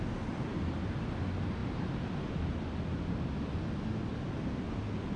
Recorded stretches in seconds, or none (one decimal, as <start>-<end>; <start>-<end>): 0.0-5.2